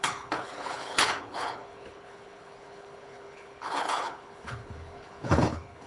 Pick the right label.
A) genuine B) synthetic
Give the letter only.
B